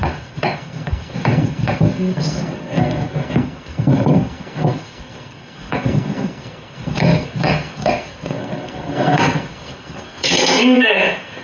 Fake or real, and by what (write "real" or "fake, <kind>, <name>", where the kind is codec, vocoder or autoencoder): fake, codec, SNAC